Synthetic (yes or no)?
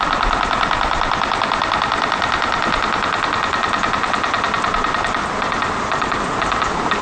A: no